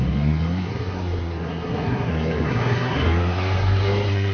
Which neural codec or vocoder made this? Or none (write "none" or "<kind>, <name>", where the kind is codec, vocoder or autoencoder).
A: codec, SNAC